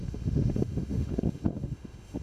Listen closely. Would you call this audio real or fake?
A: fake